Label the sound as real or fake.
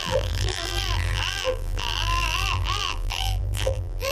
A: fake